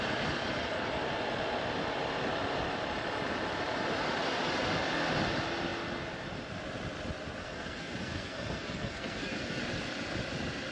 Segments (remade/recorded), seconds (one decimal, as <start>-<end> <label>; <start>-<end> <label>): 0.0-7.4 recorded; 7.4-9.6 remade; 9.6-10.7 recorded